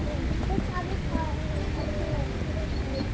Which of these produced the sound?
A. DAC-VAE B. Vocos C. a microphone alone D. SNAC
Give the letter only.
C